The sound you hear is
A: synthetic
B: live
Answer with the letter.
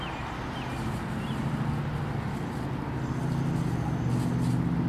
B